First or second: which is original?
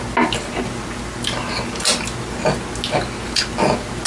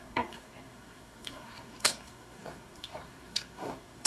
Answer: first